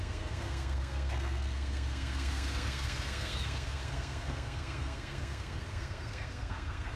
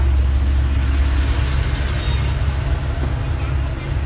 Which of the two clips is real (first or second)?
second